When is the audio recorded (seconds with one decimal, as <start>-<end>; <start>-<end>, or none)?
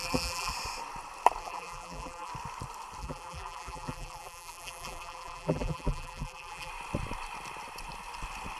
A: 0.5-1.4; 2.3-3.0; 6.7-8.6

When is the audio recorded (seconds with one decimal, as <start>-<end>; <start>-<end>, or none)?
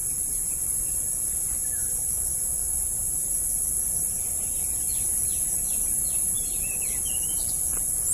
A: 0.8-2.6; 6.7-8.1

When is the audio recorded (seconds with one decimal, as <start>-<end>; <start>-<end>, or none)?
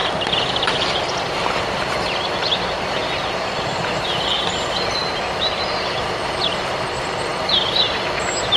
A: 7.3-8.6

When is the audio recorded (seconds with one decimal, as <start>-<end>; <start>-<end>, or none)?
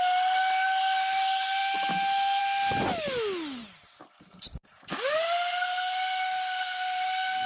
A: 0.0-7.5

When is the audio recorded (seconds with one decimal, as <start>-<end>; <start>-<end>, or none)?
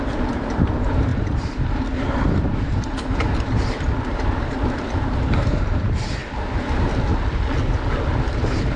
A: 6.2-8.3